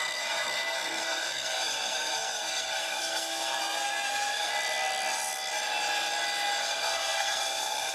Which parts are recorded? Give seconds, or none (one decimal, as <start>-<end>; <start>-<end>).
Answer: 4.5-6.6